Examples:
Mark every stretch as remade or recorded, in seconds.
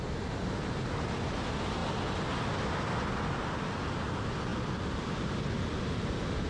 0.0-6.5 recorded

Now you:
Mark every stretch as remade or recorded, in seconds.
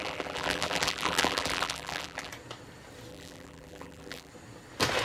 0.0-2.3 remade; 2.3-3.1 recorded; 3.1-4.3 remade; 4.3-5.0 recorded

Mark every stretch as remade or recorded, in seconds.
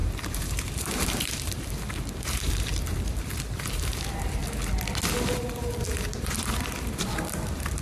0.0-4.4 remade; 4.4-5.3 recorded; 5.3-7.8 remade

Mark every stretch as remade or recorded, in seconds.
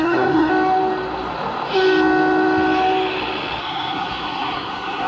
0.0-0.5 remade; 0.5-3.6 recorded; 3.6-5.1 remade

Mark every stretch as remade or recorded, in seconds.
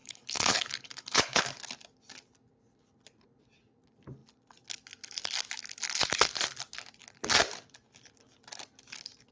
0.0-1.4 remade; 1.4-9.3 recorded